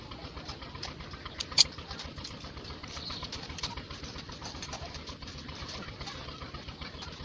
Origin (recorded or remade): remade